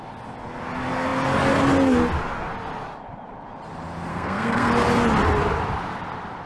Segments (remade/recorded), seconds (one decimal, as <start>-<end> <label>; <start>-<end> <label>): 0.0-4.1 recorded; 4.1-4.7 remade; 4.7-6.5 recorded